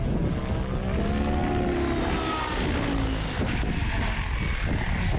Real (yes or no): yes